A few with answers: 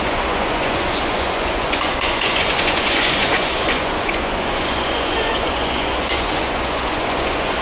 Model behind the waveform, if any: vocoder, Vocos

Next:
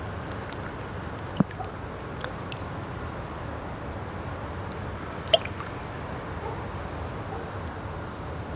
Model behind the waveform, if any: none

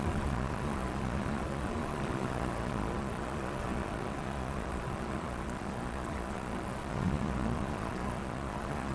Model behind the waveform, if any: vocoder, Vocos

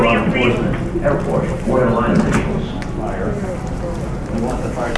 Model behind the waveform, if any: none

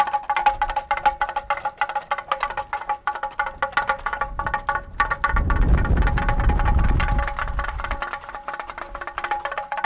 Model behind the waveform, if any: none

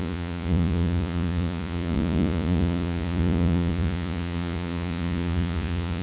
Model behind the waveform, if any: vocoder, Vocos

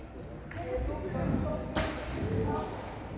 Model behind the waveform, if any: none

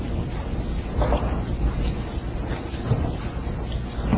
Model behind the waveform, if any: none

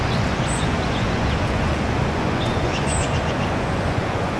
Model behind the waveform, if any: vocoder, Vocos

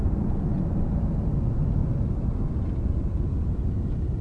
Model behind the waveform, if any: none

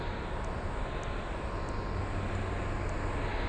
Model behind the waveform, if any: none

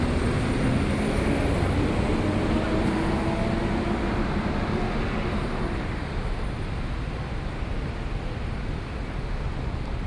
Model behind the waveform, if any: none